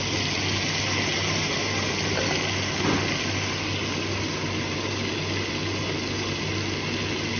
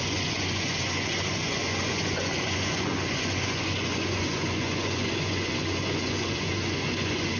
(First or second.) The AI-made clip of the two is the second